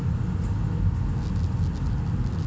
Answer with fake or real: real